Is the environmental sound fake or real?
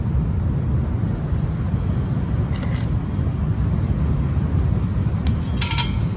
real